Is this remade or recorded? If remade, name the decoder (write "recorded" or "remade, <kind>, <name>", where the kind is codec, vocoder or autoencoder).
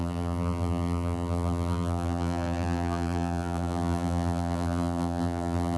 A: remade, vocoder, BigVGAN v2